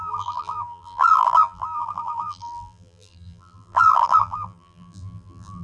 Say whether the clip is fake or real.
fake